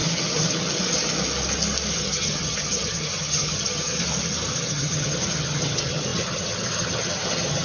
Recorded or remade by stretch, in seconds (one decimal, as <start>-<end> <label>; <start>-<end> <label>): 0.0-2.0 recorded; 2.0-3.9 remade; 3.9-4.7 recorded; 4.7-7.6 remade